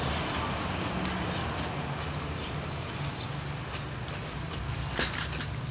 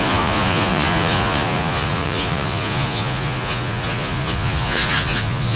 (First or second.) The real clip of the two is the first